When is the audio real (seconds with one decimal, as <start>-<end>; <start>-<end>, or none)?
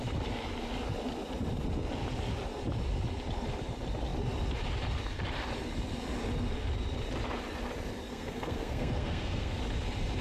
0.0-8.1; 9.6-10.2